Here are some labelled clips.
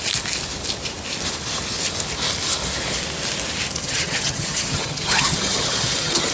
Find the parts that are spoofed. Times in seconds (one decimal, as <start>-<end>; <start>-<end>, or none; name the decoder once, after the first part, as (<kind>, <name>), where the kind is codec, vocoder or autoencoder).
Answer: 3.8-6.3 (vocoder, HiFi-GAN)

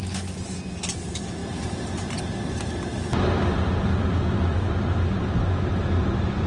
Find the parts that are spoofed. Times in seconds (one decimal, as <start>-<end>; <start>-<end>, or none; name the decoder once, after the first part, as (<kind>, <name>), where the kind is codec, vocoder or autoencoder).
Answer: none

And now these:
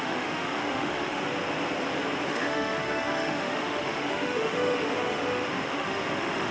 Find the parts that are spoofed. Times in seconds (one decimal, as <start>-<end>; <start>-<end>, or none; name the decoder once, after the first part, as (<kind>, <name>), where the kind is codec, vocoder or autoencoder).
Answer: 0.0-1.3 (autoencoder, DAC-VAE); 2.3-6.5

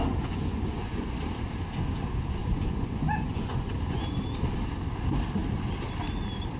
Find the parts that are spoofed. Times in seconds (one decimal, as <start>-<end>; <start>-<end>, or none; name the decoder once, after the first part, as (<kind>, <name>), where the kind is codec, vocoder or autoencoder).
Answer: 0.0-1.2 (vocoder, Vocos); 2.4-4.0

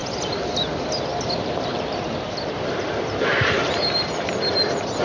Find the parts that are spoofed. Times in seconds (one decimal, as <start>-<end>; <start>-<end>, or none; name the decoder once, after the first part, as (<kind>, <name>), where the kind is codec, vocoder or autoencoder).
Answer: 1.1-4.1 (vocoder, BigVGAN v2)

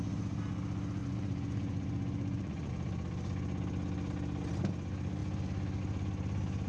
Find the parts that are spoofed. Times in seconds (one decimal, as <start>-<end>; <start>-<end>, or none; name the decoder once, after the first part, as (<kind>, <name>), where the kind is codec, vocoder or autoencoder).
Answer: 1.0-2.7 (vocoder, Vocos)